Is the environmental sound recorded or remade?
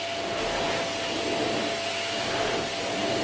recorded